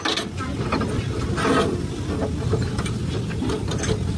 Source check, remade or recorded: recorded